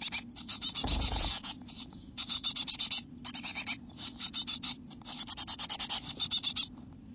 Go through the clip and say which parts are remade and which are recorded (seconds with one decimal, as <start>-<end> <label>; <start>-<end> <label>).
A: 0.0-0.5 recorded; 0.5-2.1 remade; 2.1-7.1 recorded